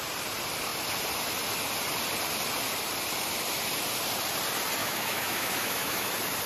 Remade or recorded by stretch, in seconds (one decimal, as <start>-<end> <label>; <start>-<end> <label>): 0.0-4.8 recorded; 4.8-6.1 remade; 6.1-6.5 recorded